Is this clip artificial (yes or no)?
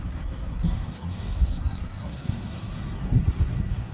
yes